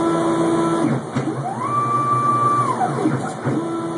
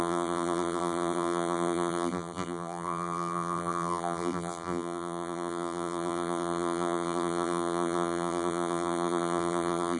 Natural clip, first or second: first